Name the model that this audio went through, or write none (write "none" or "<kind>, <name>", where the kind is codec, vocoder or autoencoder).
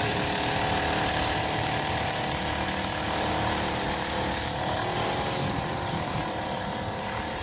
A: vocoder, BigVGAN v2